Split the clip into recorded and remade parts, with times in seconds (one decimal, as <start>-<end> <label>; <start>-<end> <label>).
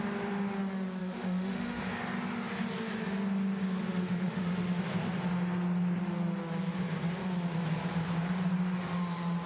0.0-1.0 recorded; 1.0-1.8 remade; 1.8-3.9 recorded; 3.9-4.8 remade; 4.8-9.5 recorded